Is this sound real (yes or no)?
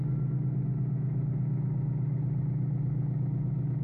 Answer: yes